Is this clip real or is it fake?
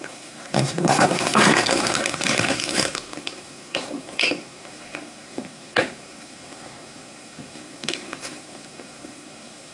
fake